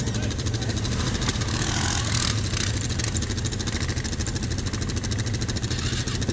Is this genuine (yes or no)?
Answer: yes